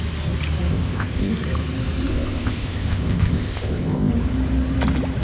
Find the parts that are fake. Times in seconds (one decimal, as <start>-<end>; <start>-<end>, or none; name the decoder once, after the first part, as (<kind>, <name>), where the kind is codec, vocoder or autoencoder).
0.7-1.3 (codec, ZipCodec); 2.1-4.1